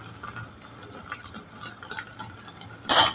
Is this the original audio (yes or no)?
yes